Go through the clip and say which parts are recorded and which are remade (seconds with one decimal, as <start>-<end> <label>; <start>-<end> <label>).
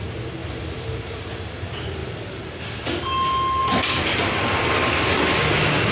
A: 0.0-0.4 recorded; 0.4-1.2 remade; 1.2-2.0 recorded; 2.0-2.6 remade; 2.6-3.6 recorded; 3.6-5.2 remade; 5.2-5.9 recorded